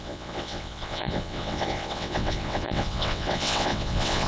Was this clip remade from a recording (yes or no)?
yes